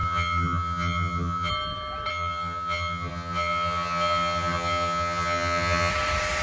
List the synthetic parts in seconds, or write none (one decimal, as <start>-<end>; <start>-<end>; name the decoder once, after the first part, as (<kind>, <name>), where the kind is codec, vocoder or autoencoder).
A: 0.0-1.5 (vocoder, HiFi-GAN); 2.1-5.9